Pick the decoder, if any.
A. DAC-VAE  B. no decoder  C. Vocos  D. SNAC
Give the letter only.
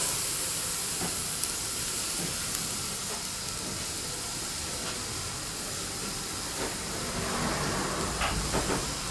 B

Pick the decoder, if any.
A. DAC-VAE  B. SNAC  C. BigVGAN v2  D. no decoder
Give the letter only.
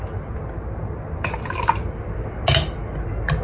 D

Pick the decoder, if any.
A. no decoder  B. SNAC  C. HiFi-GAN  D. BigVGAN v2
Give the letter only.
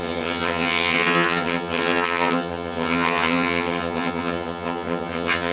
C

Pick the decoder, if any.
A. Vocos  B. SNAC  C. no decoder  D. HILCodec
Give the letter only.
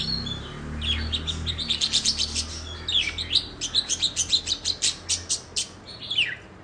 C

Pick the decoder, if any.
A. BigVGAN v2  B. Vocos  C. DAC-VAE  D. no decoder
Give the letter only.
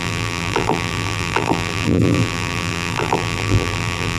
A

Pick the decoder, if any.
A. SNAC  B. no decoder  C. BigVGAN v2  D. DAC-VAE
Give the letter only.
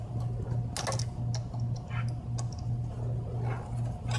B